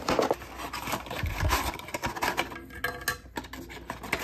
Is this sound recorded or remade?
recorded